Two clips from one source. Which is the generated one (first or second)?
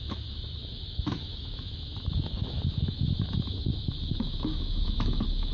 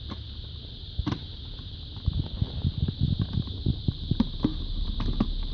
first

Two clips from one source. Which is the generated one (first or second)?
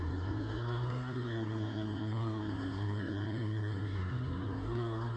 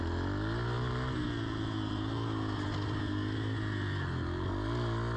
first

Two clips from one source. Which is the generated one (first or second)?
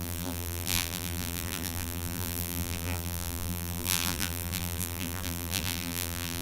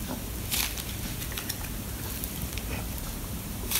first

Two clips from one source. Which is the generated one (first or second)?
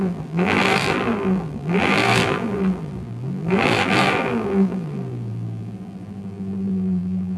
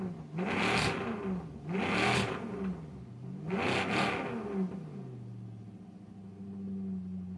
first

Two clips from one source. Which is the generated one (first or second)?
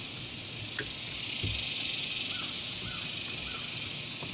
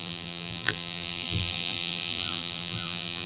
second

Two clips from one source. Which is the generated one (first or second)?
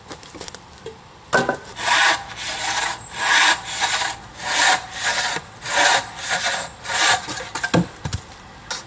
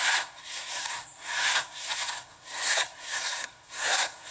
second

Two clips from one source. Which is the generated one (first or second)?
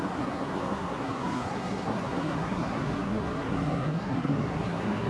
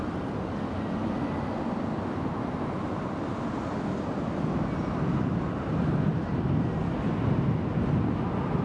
first